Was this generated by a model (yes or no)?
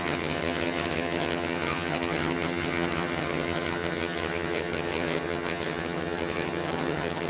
yes